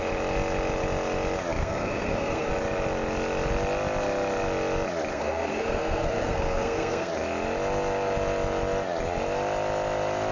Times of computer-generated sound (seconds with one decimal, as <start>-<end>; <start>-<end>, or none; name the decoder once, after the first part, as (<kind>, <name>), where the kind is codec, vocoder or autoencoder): 1.6-2.5 (codec, SNAC); 5.1-7.1